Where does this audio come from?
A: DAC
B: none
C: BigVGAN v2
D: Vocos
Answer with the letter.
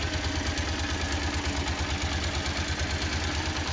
B